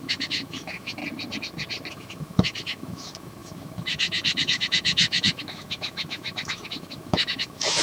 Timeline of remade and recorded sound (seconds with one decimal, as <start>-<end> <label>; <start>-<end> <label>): 0.0-1.0 remade; 1.0-1.9 recorded; 1.9-7.8 remade